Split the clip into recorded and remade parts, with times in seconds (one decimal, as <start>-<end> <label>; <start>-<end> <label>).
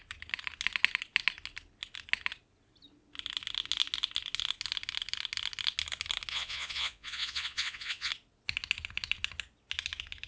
0.0-6.3 recorded; 6.3-8.1 remade; 8.1-10.3 recorded